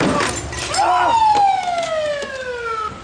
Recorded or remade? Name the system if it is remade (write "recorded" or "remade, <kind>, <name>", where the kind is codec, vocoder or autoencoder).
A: recorded